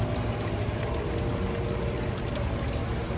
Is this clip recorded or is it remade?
recorded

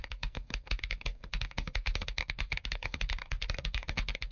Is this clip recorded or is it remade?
remade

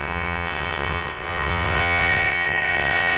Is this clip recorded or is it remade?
remade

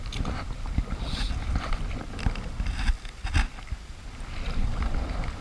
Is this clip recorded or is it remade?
recorded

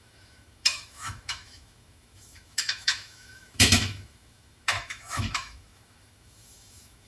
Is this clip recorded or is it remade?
remade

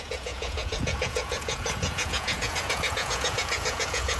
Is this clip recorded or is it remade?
remade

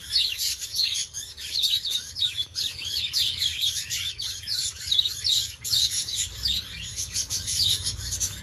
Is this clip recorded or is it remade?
remade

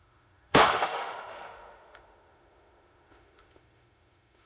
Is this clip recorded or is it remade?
remade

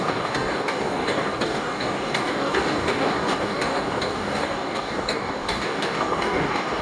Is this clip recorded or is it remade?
remade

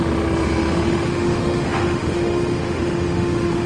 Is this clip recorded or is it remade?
remade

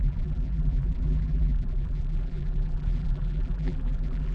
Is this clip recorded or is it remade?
remade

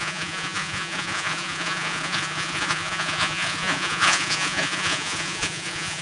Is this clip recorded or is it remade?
remade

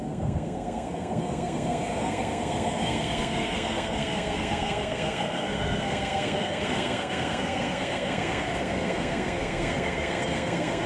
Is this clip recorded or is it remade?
remade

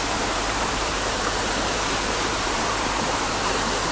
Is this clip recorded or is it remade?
remade